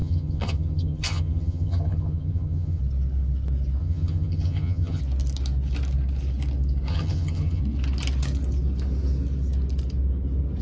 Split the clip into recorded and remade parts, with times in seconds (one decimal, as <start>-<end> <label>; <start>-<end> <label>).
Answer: 0.0-2.8 remade; 2.8-3.8 recorded; 3.8-5.0 remade; 5.0-6.9 recorded; 6.9-7.6 remade; 7.6-10.6 recorded

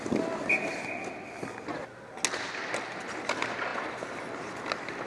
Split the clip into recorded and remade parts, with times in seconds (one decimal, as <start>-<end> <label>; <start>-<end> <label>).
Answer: 0.0-5.1 recorded

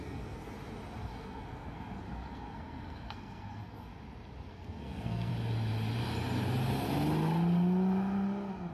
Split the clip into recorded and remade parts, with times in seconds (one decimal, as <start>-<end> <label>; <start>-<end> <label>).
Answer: 0.0-0.4 remade; 0.4-1.0 recorded; 1.0-3.9 remade; 3.9-4.5 recorded; 4.5-5.3 remade; 5.3-8.7 recorded